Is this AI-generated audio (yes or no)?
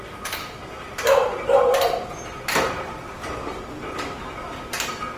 no